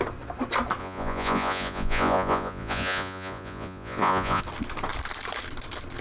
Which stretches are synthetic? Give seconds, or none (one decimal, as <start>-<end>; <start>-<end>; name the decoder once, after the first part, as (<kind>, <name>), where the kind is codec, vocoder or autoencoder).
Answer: 0.8-4.4 (vocoder, Vocos)